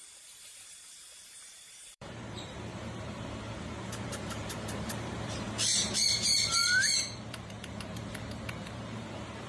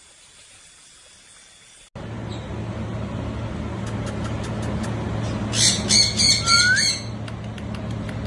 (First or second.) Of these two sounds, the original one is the second